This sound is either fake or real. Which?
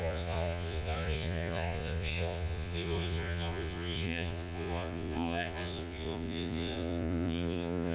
fake